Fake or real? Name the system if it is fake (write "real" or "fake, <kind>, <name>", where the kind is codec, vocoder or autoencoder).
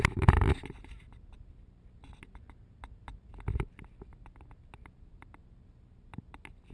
real